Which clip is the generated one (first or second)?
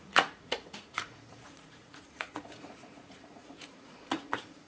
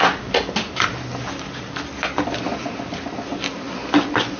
first